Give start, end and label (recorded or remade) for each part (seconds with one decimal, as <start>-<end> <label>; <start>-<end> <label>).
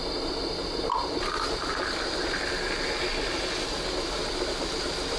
0.0-5.2 recorded